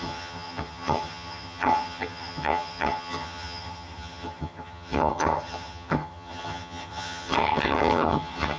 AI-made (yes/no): yes